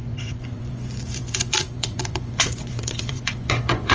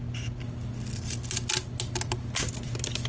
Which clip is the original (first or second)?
second